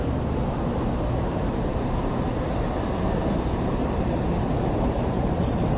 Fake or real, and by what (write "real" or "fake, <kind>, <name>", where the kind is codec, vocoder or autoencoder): fake, vocoder, BigVGAN v2